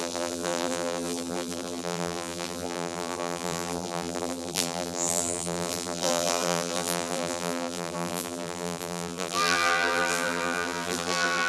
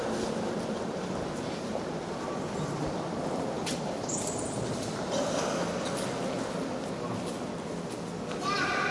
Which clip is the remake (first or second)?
first